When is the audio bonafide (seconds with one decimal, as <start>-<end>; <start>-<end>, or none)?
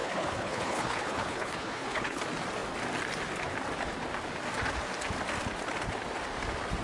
2.2-6.8